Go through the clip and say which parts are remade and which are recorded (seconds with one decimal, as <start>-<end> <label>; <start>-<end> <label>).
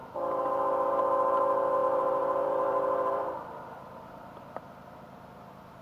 0.0-1.8 recorded; 1.8-4.4 remade; 4.4-5.8 recorded